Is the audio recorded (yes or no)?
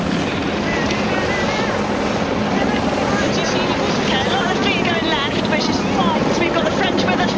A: yes